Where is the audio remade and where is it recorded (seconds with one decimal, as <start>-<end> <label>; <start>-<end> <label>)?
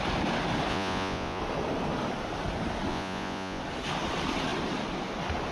0.0-0.7 recorded; 0.7-1.4 remade; 1.4-2.9 recorded; 2.9-3.6 remade; 3.6-5.5 recorded